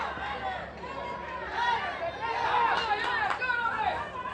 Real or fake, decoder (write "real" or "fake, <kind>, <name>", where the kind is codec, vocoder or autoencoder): real